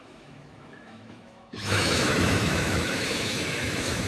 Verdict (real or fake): fake